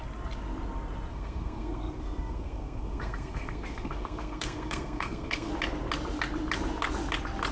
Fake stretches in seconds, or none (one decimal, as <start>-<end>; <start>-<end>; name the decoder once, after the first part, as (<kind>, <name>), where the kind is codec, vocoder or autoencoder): 1.1-5.5 (codec, SNAC)